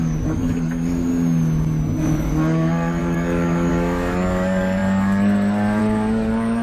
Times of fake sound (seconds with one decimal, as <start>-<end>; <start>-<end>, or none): 0.0-1.1; 2.0-6.6